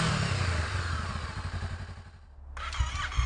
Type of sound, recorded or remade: recorded